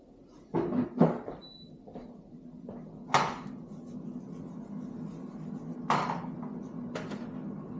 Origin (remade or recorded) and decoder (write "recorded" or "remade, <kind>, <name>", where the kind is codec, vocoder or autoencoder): recorded